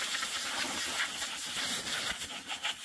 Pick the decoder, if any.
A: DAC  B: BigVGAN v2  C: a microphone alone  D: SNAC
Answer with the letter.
B